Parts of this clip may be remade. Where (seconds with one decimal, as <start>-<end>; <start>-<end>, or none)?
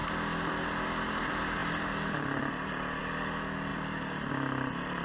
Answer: none